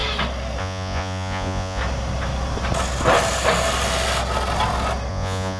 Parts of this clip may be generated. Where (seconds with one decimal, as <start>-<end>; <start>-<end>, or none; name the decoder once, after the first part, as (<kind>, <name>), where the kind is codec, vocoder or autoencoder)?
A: 0.6-1.8 (vocoder, Vocos); 5.1-5.6